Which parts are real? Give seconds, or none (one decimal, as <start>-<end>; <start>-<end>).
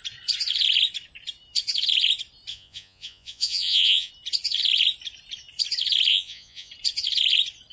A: 0.0-2.5; 4.1-6.1; 6.7-7.7